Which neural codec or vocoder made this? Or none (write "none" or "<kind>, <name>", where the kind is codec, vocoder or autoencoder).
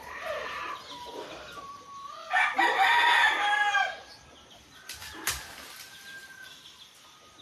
none